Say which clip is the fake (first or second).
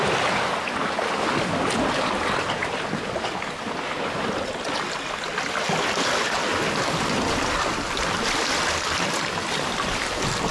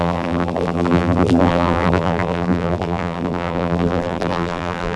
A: second